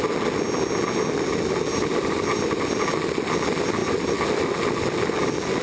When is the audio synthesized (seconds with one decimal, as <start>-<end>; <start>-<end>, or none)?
none